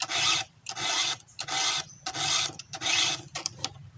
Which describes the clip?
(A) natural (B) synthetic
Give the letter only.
A